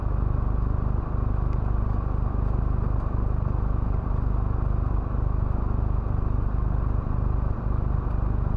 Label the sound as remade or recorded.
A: recorded